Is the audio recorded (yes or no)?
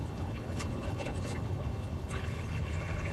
no